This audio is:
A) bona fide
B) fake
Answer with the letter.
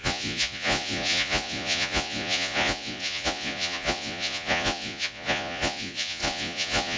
B